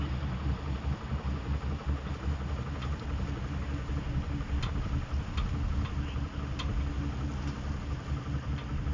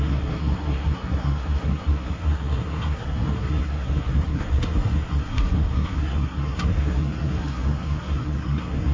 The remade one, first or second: second